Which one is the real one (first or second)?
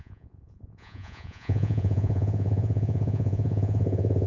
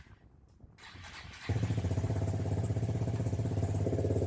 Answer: second